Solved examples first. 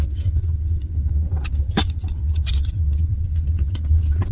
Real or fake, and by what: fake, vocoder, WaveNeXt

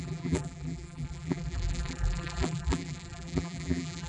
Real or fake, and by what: fake, vocoder, BigVGAN v2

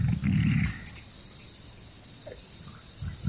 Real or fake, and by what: real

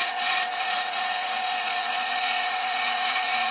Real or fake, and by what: fake, vocoder, Vocos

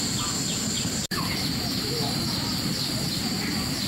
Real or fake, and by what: real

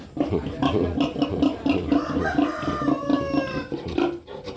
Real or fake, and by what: real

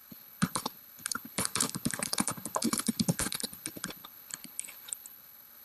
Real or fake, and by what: fake, codec, HILCodec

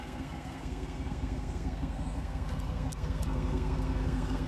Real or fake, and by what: fake, codec, SNAC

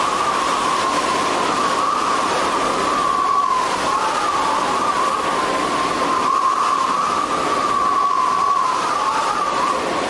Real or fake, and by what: real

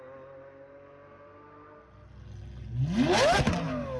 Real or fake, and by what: real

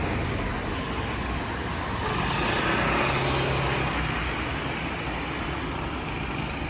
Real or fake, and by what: real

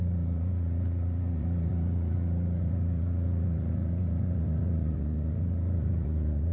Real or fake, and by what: fake, vocoder, Vocos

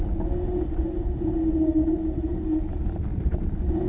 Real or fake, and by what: real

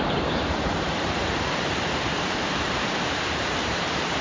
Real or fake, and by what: fake, vocoder, BigVGAN v2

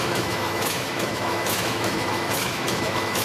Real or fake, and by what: fake, autoencoder, DAC-VAE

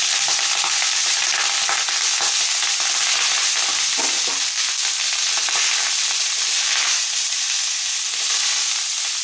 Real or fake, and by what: real